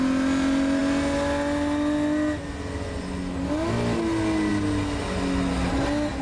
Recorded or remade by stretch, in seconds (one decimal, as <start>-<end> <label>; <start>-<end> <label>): 0.0-6.2 recorded